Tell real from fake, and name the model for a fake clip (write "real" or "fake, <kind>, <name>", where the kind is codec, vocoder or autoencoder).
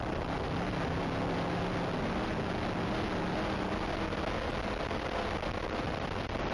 real